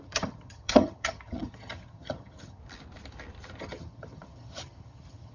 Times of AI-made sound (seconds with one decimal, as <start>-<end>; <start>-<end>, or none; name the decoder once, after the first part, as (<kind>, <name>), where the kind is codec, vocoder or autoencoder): 0.0-2.6 (vocoder, HiFi-GAN); 3.6-5.3